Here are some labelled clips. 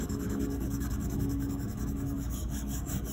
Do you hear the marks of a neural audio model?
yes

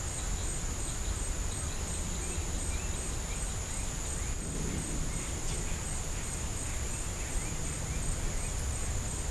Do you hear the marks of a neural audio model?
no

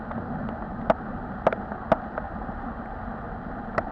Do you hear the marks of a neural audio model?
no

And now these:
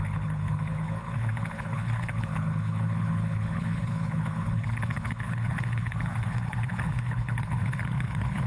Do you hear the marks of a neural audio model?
yes